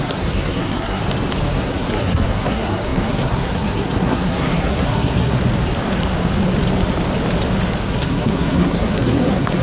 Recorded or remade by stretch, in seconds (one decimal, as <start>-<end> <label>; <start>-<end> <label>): 0.0-1.0 remade; 1.0-1.5 recorded; 1.5-5.4 remade; 5.4-7.9 recorded; 7.9-9.6 remade